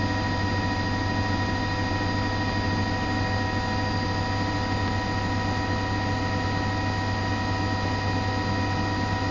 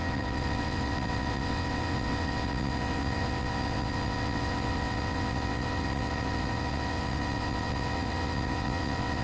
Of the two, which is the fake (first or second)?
second